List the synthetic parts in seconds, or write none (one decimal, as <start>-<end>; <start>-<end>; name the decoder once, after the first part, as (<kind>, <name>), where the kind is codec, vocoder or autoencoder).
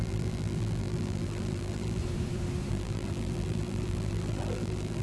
0.0-2.0 (vocoder, BigVGAN v2); 2.7-5.0